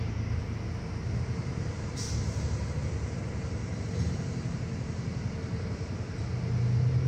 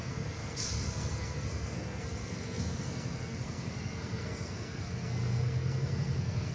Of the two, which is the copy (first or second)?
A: second